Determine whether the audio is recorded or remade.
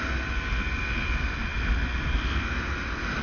recorded